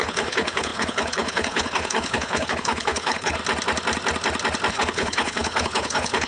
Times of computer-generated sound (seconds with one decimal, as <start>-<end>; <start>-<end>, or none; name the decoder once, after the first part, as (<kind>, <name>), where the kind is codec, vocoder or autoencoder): 0.0-3.4 (codec, HILCodec); 4.7-6.3